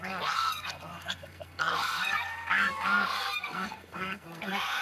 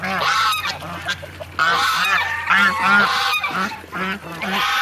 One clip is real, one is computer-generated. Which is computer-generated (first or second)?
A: first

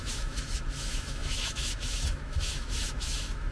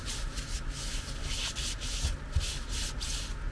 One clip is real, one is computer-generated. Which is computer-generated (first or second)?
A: first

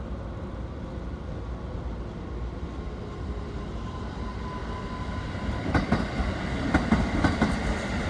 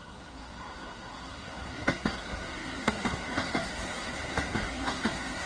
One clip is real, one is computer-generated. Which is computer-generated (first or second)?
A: second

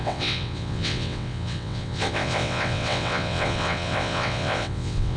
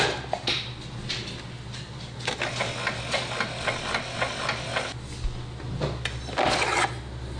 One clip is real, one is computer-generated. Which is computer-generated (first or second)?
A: first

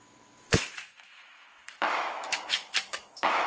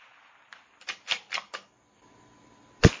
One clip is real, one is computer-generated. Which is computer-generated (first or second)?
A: first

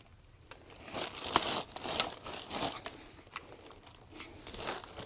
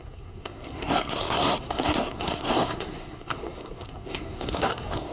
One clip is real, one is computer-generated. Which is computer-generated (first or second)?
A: second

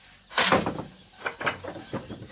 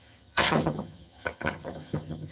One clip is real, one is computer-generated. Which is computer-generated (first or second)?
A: second